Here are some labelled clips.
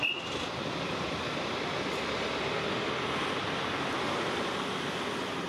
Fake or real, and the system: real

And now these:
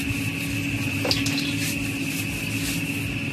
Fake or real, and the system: real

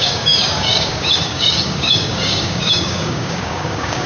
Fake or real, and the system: fake, codec, DAC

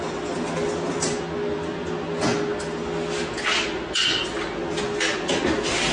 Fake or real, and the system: real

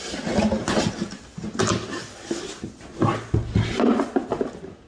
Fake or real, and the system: real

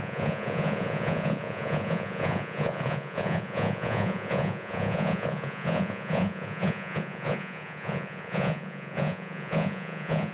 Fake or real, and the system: fake, vocoder, Vocos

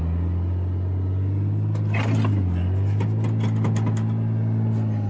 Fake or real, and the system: real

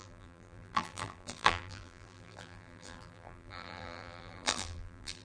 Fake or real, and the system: fake, vocoder, BigVGAN v2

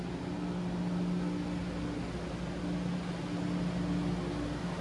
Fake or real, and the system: real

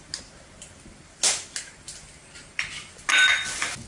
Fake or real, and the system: real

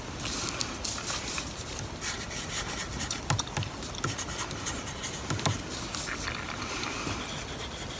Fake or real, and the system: real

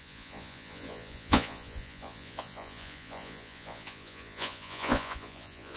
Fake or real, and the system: fake, vocoder, Vocos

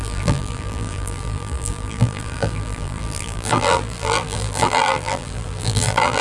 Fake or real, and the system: fake, vocoder, BigVGAN v2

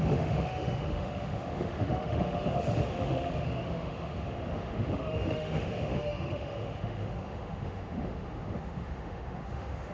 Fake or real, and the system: fake, autoencoder, DAC-VAE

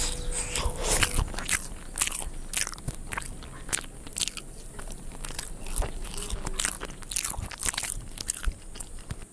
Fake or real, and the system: real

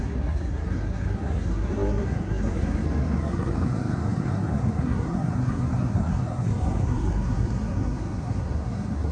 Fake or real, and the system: fake, codec, SNAC